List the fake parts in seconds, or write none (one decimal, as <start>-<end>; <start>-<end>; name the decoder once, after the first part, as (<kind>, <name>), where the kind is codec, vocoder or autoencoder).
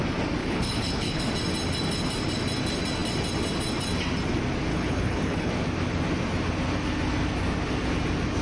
0.4-1.2 (codec, HILCodec); 4.7-5.5